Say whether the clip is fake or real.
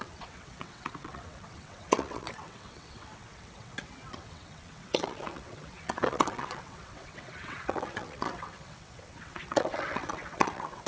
fake